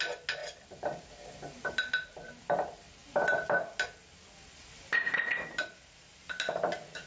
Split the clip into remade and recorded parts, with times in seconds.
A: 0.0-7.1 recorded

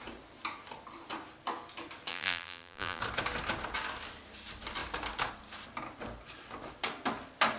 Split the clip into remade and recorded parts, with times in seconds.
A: 0.0-2.1 recorded; 2.1-3.0 remade; 3.0-7.6 recorded